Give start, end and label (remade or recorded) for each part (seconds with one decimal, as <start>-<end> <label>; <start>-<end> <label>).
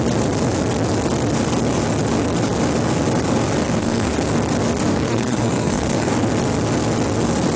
0.0-3.6 recorded; 3.6-4.1 remade; 4.1-4.9 recorded; 4.9-6.1 remade; 6.1-7.6 recorded